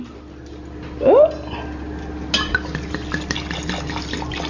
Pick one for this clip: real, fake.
real